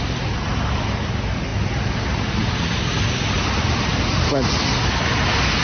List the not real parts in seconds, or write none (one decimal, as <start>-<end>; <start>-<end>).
none